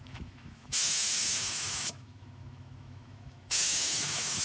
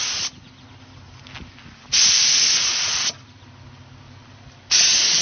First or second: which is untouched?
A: second